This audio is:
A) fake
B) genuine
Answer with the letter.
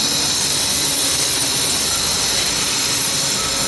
B